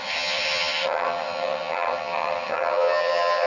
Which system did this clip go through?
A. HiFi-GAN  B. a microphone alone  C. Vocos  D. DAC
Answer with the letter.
A